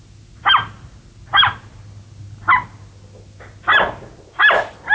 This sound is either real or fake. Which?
real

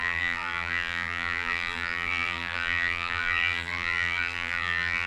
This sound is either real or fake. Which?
fake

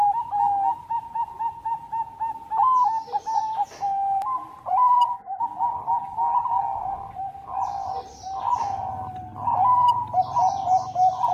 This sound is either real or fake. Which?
real